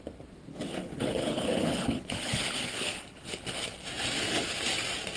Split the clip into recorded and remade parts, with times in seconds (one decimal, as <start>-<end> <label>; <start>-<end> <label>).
0.0-0.5 recorded; 0.5-3.4 remade; 3.4-5.2 recorded